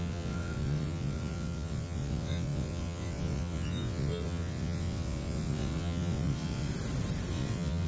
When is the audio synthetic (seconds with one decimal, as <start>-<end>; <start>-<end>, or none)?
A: 0.0-6.7; 7.3-7.9